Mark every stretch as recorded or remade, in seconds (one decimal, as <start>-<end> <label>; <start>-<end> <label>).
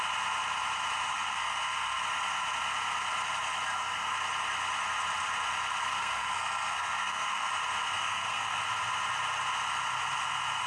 0.0-1.1 recorded; 1.1-2.0 remade; 2.0-5.8 recorded; 5.8-7.5 remade; 7.5-8.0 recorded; 8.0-8.6 remade; 8.6-10.7 recorded